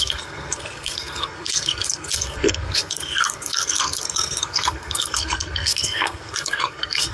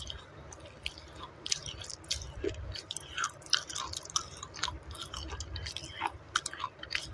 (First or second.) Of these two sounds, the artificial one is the first